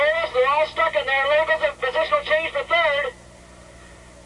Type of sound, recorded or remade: recorded